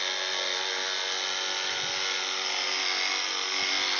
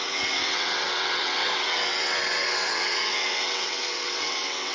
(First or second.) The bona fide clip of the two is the first